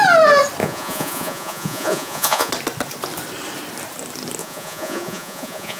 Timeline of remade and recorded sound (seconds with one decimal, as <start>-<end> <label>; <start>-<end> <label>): 0.0-0.6 recorded; 0.6-2.5 remade; 2.5-4.4 recorded; 4.4-5.8 remade